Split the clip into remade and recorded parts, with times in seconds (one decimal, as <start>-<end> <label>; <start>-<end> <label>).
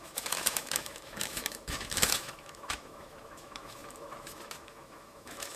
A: 0.0-5.6 remade